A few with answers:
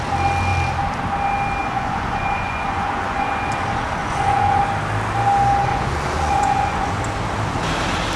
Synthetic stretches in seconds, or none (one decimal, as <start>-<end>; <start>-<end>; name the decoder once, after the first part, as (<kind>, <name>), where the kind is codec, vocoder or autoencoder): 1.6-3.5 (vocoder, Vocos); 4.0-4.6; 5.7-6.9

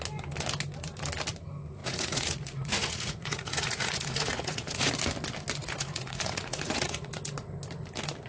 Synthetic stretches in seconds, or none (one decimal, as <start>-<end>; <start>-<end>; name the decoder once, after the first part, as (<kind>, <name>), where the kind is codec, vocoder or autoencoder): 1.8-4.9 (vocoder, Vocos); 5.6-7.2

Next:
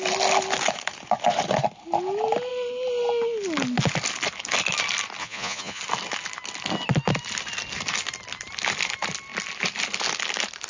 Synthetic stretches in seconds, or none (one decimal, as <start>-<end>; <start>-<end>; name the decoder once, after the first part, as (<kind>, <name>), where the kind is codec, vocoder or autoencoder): 5.2-5.8 (vocoder, Vocos)

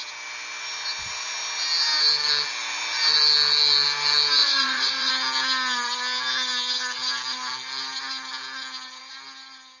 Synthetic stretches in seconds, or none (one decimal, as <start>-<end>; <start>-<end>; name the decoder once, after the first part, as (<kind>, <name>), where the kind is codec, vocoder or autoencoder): 4.4-5.1 (vocoder, Vocos)

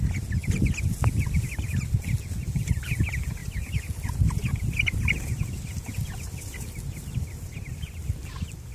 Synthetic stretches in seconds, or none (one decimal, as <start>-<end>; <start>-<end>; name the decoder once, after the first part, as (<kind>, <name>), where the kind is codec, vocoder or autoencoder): none

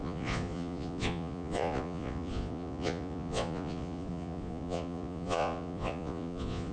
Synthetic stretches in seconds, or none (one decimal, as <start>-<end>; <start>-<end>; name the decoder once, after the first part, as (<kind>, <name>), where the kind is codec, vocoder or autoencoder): 0.0-6.7 (vocoder, Vocos)

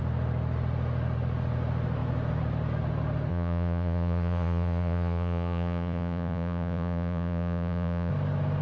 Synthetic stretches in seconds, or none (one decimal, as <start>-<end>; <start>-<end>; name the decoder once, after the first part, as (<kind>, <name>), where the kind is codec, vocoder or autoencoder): 3.3-8.1 (vocoder, Vocos)